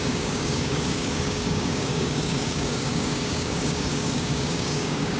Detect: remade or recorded remade